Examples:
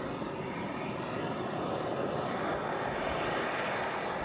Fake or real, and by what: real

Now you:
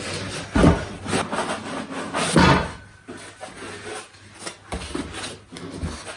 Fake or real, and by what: real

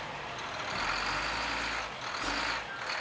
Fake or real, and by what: real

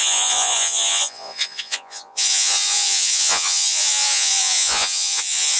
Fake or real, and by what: fake, vocoder, Vocos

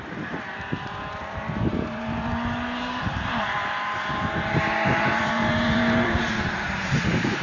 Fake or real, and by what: fake, vocoder, BigVGAN v2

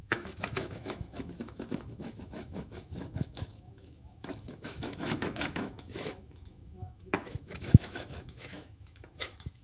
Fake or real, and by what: fake, autoencoder, DAC-VAE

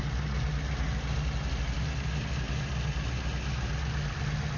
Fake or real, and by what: real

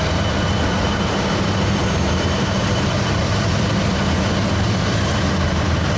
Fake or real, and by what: fake, vocoder, BigVGAN v2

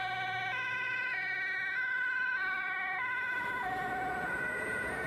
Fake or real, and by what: fake, vocoder, Vocos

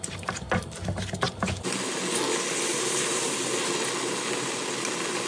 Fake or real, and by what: real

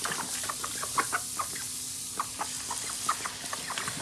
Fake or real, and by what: real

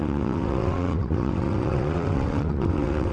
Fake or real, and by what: fake, vocoder, WaveNeXt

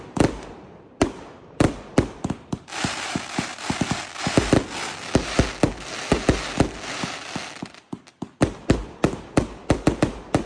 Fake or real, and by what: real